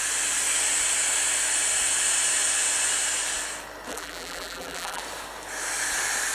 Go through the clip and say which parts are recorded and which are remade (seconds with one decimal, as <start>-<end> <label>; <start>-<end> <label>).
0.0-3.9 recorded; 3.9-5.0 remade; 5.0-6.3 recorded